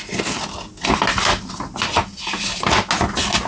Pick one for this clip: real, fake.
real